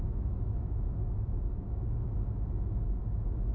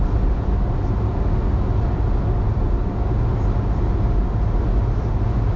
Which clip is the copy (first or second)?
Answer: first